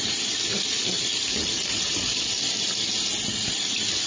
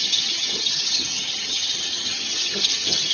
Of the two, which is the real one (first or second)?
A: first